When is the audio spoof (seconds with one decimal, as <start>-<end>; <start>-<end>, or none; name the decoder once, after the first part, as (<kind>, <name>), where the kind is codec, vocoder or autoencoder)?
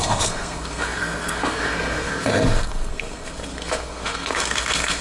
0.0-5.0 (codec, SNAC)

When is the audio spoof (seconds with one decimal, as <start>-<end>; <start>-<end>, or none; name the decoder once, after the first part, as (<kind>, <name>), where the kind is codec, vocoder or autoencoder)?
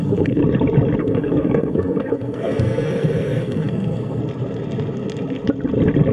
0.0-0.4 (codec, SNAC); 1.0-4.2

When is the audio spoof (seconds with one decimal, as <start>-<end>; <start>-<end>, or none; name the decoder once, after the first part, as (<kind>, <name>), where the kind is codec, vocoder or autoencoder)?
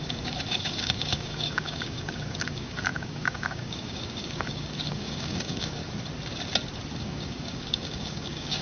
0.0-5.8 (codec, DAC); 7.0-8.6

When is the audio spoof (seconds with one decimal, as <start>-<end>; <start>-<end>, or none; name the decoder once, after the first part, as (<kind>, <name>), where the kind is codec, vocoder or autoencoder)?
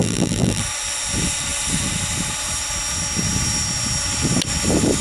0.0-0.6 (vocoder, BigVGAN v2)